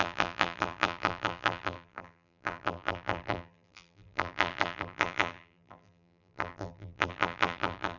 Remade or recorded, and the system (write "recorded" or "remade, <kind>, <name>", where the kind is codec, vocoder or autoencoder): remade, vocoder, BigVGAN v2